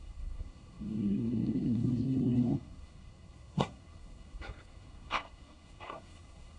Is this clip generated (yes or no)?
yes